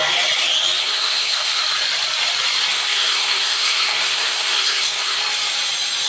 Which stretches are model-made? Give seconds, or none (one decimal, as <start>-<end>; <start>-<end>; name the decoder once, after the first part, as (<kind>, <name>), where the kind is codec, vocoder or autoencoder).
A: 0.8-1.6 (codec, SNAC); 2.7-5.2